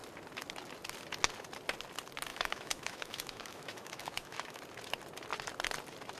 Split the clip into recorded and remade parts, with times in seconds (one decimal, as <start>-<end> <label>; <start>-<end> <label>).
0.0-2.3 recorded; 2.3-4.6 remade; 4.6-6.2 recorded